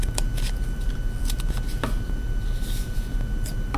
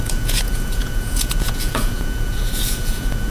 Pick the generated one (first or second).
second